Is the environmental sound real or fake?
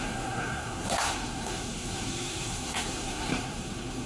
fake